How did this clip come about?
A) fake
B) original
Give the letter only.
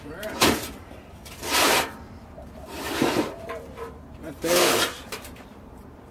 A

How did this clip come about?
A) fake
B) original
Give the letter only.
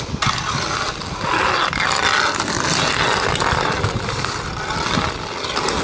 B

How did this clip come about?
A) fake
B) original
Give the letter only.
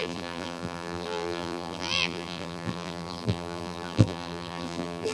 A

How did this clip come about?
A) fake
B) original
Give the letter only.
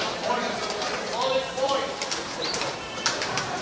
A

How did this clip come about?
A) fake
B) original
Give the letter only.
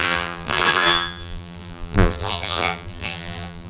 A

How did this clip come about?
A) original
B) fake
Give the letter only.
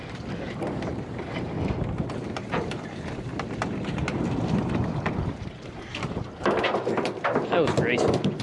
B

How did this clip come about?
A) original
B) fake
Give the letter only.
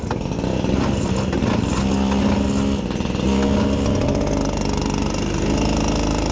A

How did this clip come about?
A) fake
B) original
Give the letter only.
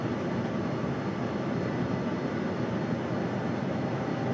B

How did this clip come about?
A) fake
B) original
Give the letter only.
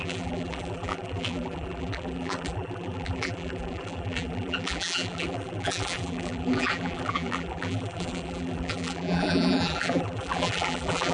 A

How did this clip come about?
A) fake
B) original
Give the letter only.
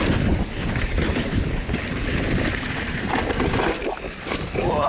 A